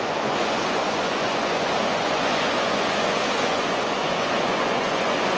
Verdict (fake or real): fake